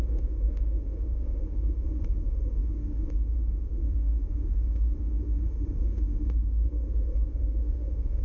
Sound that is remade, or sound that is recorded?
remade